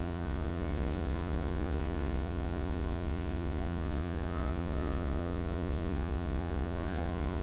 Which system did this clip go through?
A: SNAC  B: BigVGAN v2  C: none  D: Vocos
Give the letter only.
D